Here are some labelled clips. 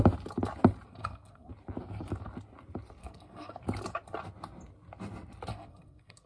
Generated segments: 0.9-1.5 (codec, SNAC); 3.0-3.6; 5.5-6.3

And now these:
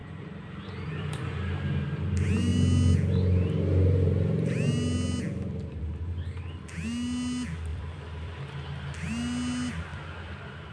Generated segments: 0.0-1.3 (vocoder, BigVGAN v2); 7.7-8.4; 9.9-10.7

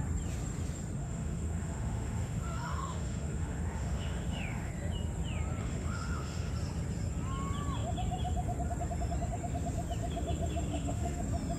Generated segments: 1.0-4.7 (autoencoder, DAC-VAE); 5.6-6.5; 10.7-11.2

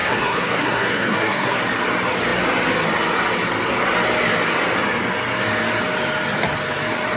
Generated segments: 0.0-1.6 (codec, SNAC)

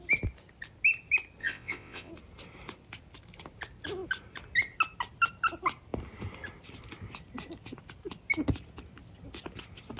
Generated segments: 1.4-2.1 (vocoder, WaveNeXt)